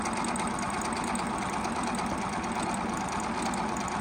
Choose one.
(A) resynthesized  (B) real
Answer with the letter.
B